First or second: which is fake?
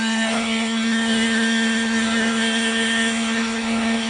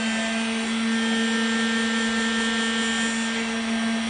first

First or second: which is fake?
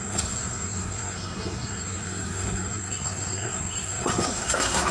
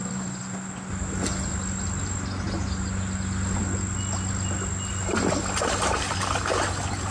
first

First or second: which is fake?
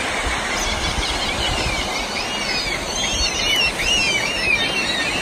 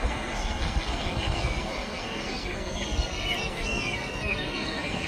second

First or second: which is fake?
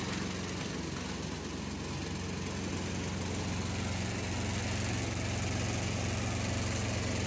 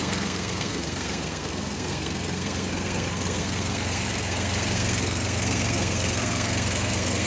second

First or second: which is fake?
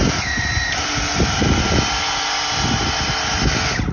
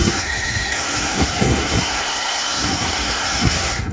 second